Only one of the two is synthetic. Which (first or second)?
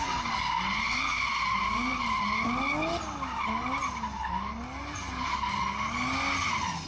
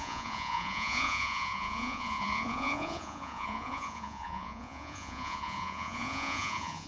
second